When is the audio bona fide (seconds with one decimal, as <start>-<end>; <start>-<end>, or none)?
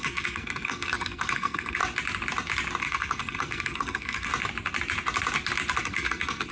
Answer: 1.8-2.8; 4.3-5.8